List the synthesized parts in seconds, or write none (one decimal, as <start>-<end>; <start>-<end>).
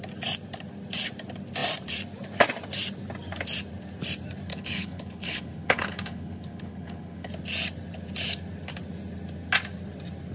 4.5-7.3